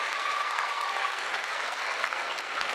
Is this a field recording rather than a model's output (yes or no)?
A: no